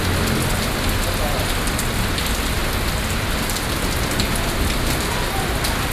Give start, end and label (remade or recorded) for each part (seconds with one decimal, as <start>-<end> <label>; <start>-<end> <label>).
0.0-5.9 recorded